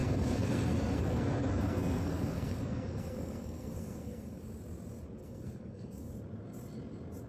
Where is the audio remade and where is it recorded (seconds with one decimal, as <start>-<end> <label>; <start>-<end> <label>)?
0.0-4.4 remade; 4.4-5.2 recorded; 5.2-6.1 remade; 6.1-7.3 recorded